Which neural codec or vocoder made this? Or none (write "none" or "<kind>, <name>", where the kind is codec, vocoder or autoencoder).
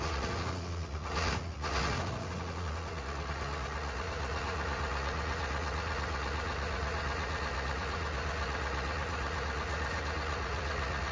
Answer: vocoder, Vocos